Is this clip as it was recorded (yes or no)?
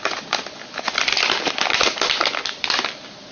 yes